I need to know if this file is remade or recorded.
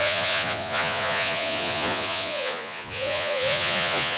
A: remade